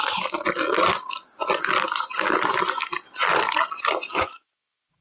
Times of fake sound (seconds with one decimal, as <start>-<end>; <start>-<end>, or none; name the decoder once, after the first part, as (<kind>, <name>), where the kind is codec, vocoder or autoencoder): 4.1-5.0 (autoencoder, DAC-VAE)